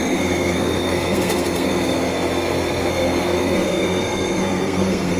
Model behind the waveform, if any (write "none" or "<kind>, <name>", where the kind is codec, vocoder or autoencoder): codec, SNAC